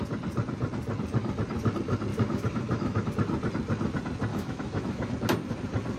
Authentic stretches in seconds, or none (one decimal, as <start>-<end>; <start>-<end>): 0.0-2.1; 3.1-4.3; 5.1-6.0